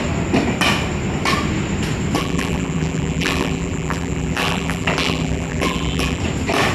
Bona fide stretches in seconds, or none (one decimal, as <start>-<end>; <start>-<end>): 0.0-2.2; 6.2-6.7